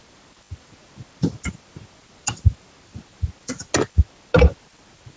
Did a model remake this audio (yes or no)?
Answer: no